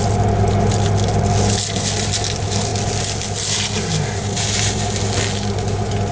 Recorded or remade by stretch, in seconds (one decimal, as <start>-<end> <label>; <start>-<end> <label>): 0.0-6.1 recorded